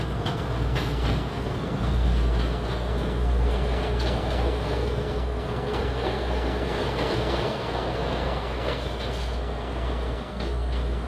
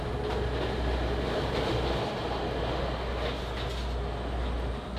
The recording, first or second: second